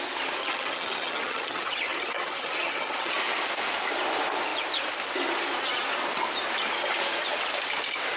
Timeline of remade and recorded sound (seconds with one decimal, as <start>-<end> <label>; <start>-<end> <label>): 0.0-0.4 recorded; 0.4-3.1 remade; 3.1-8.2 recorded

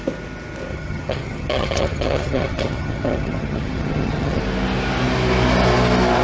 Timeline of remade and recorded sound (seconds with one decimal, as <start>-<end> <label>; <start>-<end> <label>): 0.0-0.7 recorded; 0.7-4.4 remade; 4.4-6.2 recorded

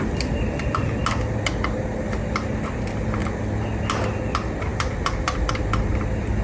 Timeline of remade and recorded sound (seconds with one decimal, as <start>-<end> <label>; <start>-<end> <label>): 0.0-6.4 recorded

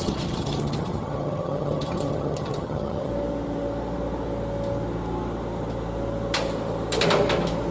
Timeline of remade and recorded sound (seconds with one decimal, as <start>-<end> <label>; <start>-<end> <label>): 0.0-3.1 remade; 3.1-7.7 recorded

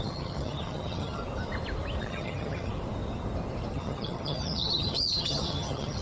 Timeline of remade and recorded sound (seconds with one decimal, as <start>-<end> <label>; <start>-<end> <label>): 0.0-1.2 remade; 1.2-2.0 recorded; 2.0-2.7 remade; 2.7-3.7 recorded; 3.7-6.0 remade

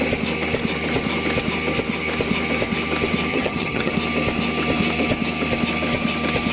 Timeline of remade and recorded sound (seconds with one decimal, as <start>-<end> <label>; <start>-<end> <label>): 0.0-3.3 recorded; 3.3-3.9 remade; 3.9-6.5 recorded

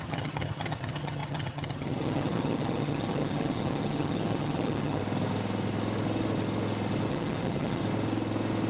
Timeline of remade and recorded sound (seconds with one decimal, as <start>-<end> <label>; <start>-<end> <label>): 0.0-5.0 remade; 5.0-7.1 recorded; 7.1-7.8 remade; 7.8-8.7 recorded